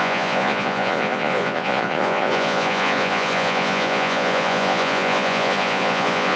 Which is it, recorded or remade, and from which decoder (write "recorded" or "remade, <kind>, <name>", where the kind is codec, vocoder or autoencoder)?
remade, vocoder, Vocos